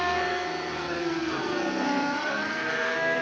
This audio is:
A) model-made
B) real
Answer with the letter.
A